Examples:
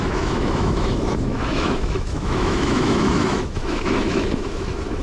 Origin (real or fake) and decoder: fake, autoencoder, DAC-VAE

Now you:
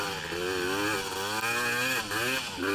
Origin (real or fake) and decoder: real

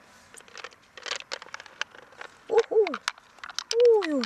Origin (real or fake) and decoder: real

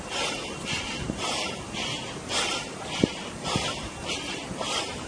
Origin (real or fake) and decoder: real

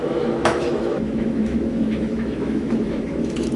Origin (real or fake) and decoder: fake, autoencoder, DAC-VAE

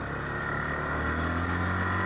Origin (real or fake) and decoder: real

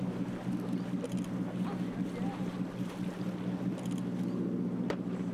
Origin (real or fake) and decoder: real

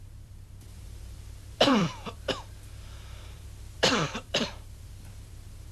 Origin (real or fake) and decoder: fake, vocoder, BigVGAN v2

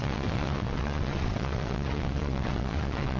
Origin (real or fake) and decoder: fake, vocoder, WaveNeXt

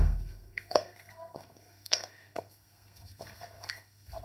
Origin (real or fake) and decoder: fake, codec, SNAC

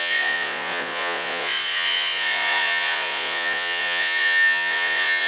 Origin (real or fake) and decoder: fake, vocoder, Vocos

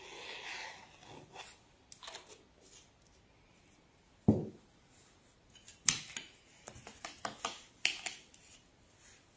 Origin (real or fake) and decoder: real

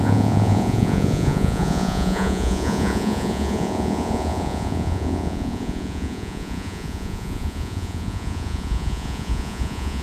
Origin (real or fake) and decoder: fake, vocoder, Vocos